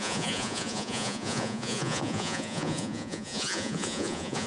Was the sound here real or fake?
fake